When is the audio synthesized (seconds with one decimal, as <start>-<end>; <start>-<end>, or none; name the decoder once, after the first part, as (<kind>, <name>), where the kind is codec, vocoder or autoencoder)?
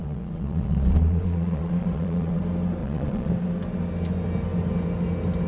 0.0-2.4 (vocoder, Vocos); 2.8-3.3